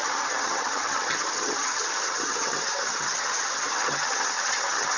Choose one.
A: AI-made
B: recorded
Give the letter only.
A